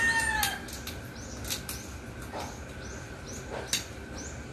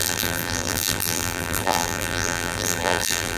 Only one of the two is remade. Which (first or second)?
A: second